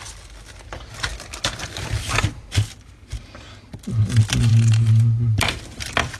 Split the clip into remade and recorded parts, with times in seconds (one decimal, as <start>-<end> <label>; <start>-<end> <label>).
0.0-4.5 recorded; 4.5-5.6 remade; 5.6-6.2 recorded